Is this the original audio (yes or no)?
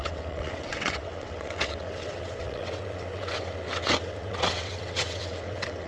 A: no